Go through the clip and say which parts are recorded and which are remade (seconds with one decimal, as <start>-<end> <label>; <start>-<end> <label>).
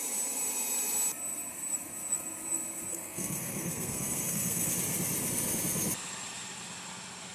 0.0-2.9 recorded; 2.9-4.7 remade; 4.7-7.3 recorded